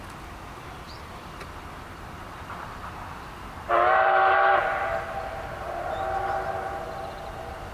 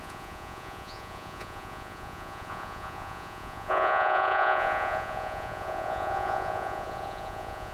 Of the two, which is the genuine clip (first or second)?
first